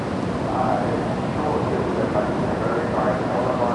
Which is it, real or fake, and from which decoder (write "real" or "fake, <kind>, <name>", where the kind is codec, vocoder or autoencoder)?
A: real